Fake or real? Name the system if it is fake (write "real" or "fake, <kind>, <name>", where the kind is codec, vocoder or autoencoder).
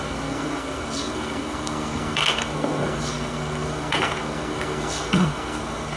fake, codec, SNAC